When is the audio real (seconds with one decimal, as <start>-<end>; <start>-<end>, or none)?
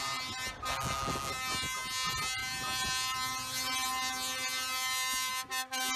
0.0-2.4; 5.3-6.0